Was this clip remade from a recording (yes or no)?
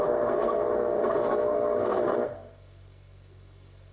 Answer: yes